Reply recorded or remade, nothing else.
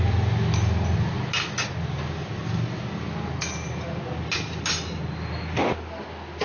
recorded